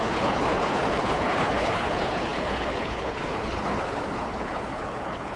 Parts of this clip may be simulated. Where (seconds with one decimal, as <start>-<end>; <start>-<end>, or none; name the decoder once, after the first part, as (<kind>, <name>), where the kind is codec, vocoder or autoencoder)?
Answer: 0.0-5.4 (codec, HILCodec)